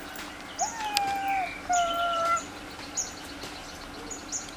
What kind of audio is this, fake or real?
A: real